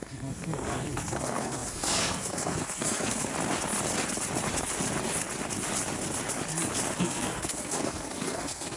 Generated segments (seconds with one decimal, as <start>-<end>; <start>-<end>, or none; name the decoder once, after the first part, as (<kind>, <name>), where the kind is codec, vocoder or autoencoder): 0.0-3.3 (codec, SNAC); 7.0-8.8